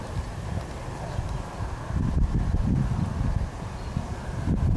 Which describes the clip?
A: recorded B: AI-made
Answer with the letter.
A